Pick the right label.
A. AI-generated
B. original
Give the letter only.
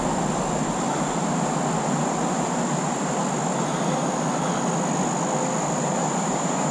B